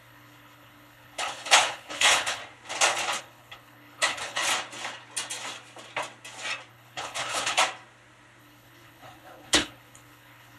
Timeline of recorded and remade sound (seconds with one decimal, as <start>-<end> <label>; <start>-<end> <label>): 0.0-2.4 remade; 2.4-3.2 recorded; 3.2-4.4 remade; 4.4-6.7 recorded; 6.7-7.6 remade; 7.6-8.4 recorded; 8.4-10.6 remade

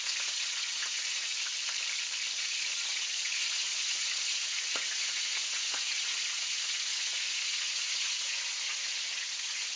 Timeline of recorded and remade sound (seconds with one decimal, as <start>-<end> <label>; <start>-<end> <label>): 0.0-1.5 remade; 1.5-2.4 recorded; 2.4-9.8 remade

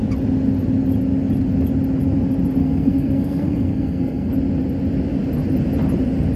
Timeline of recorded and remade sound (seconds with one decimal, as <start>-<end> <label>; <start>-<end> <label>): 0.0-2.6 recorded; 2.6-4.3 remade; 4.3-6.4 recorded

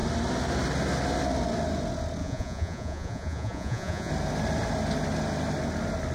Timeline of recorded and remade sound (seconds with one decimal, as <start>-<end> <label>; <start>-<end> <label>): 0.0-2.2 recorded; 2.2-4.1 remade; 4.1-6.1 recorded